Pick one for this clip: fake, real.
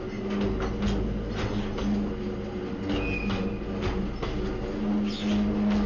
real